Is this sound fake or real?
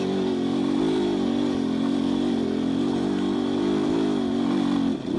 real